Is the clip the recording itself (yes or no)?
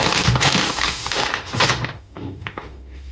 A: no